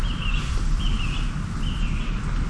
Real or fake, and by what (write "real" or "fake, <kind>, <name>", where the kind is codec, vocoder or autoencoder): real